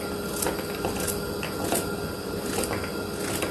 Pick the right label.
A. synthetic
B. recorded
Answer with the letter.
B